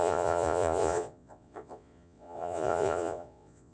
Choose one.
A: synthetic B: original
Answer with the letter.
A